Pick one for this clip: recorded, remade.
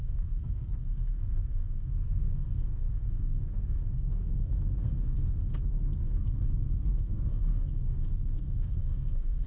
remade